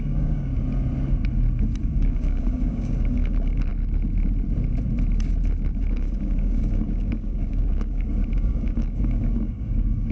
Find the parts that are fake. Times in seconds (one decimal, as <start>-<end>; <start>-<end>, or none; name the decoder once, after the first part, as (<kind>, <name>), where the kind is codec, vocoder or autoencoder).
0.0-0.5 (codec, DAC); 1.8-3.7; 5.8-10.1